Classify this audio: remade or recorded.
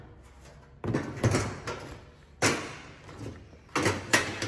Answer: recorded